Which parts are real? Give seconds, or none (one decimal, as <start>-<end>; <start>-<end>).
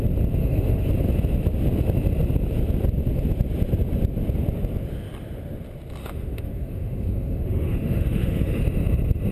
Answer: 0.0-0.4; 0.9-6.0; 8.6-9.3